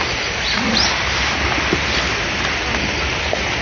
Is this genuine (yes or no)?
yes